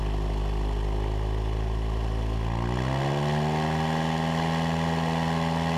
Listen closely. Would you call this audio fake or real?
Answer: real